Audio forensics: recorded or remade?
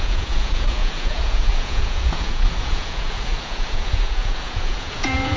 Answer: remade